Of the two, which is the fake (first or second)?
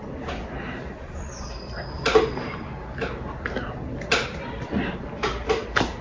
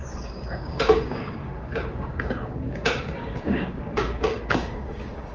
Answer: second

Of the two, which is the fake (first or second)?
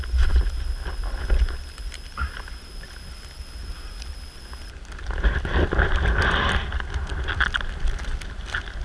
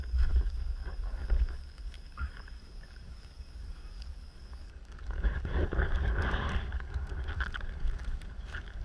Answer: second